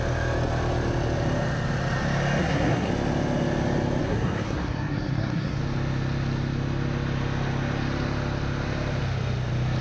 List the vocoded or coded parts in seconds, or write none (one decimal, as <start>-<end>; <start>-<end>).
2.4-2.9; 4.0-5.6